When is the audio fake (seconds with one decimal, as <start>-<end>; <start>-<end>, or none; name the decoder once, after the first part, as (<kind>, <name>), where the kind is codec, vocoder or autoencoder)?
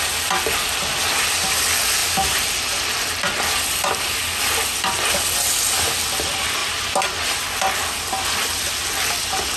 2.0-2.5 (vocoder, BigVGAN v2)